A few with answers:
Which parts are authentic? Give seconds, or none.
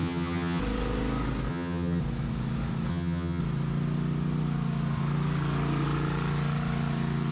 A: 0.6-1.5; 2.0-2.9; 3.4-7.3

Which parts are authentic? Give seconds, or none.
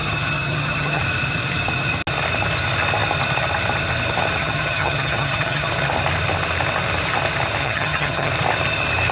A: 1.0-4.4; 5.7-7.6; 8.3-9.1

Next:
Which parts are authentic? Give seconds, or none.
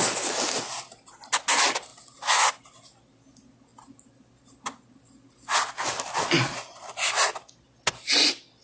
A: 0.0-8.6